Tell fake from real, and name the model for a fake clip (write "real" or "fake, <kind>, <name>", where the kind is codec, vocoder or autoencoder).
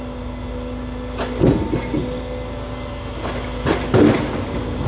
real